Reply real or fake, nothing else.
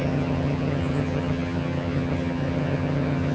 fake